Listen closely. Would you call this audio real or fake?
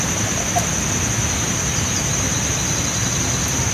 real